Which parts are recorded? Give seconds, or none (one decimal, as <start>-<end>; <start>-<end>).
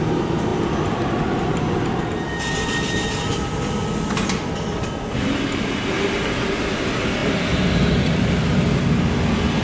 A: 0.0-9.6